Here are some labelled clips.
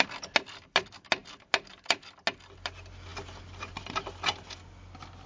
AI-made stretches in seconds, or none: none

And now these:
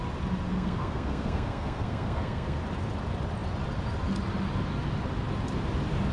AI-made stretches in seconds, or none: 0.5-2.6 (codec, SNAC)

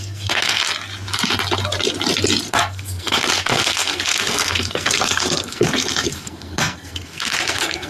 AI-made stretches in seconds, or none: 0.0-0.6 (codec, SNAC); 2.5-7.9

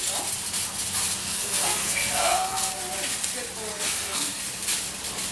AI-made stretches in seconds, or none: 1.2-2.7 (codec, SNAC); 3.7-4.4

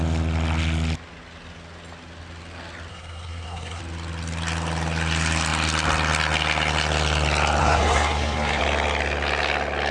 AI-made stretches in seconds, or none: 2.9-3.8 (codec, SNAC); 7.6-8.6